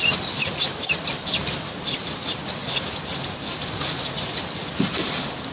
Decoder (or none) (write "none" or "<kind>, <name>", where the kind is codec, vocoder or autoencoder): none